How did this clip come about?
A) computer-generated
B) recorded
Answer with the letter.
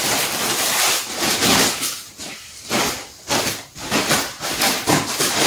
B